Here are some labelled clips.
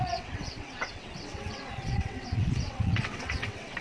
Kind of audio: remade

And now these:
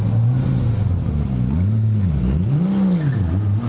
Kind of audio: recorded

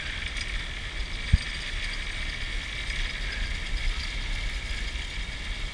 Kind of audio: recorded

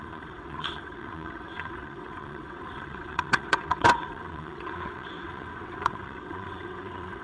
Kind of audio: remade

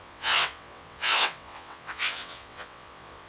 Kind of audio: remade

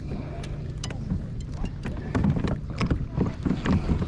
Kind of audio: recorded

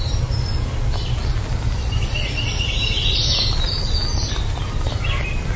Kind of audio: recorded